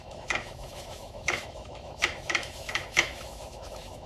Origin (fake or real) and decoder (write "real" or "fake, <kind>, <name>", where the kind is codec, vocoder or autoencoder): fake, autoencoder, DAC-VAE